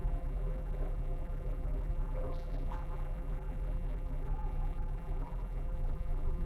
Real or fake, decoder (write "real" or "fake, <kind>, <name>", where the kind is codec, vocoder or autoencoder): fake, vocoder, BigVGAN v2